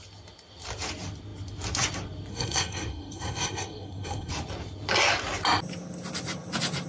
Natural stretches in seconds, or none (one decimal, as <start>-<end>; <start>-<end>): 0.0-2.3; 4.3-6.9